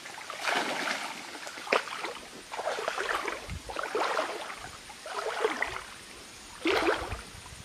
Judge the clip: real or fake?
real